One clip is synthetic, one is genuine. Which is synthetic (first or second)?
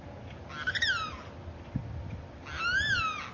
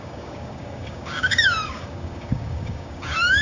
second